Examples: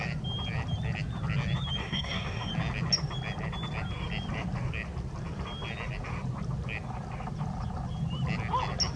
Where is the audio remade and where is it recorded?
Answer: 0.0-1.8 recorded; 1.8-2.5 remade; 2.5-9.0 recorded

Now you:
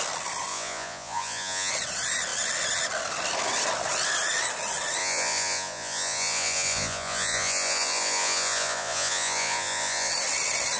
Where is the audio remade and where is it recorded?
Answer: 0.0-0.5 recorded; 0.5-1.7 remade; 1.7-5.0 recorded; 5.0-10.1 remade; 10.1-10.8 recorded

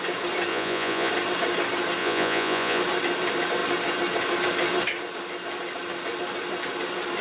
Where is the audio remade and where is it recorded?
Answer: 0.0-0.5 recorded; 0.5-1.1 remade; 1.1-2.0 recorded; 2.0-2.8 remade; 2.8-7.2 recorded

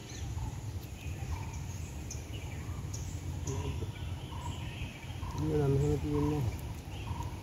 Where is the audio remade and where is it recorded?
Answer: 0.0-1.9 remade; 1.9-4.9 recorded; 4.9-5.4 remade; 5.4-7.4 recorded